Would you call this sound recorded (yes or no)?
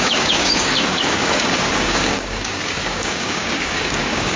no